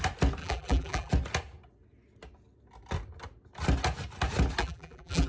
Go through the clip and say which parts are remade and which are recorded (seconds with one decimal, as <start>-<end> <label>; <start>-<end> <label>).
0.0-0.4 recorded; 0.4-1.1 remade; 1.1-4.6 recorded; 4.6-5.3 remade